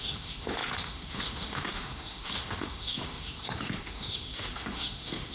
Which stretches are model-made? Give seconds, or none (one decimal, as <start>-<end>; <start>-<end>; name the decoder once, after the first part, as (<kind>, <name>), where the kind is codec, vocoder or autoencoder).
0.0-5.3 (autoencoder, DAC-VAE)